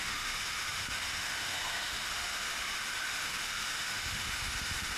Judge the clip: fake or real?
fake